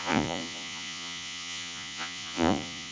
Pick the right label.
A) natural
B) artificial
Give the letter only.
B